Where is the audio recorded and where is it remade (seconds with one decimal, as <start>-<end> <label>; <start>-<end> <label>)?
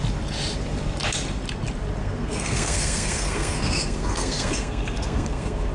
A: 0.0-2.0 recorded; 2.0-5.7 remade